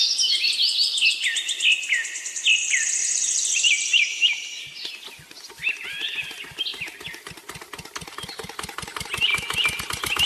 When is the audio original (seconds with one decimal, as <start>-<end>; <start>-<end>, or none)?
0.0-3.0; 4.9-6.7; 7.3-10.3

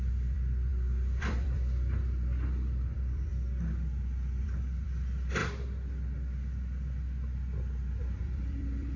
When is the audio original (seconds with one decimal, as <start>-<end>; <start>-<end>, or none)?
3.3-4.4; 5.4-8.0